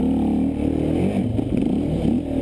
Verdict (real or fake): real